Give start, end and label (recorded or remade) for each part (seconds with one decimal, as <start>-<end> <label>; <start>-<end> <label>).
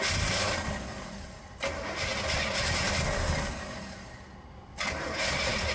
0.0-5.7 recorded